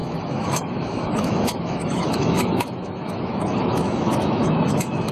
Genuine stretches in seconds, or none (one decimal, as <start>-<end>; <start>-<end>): none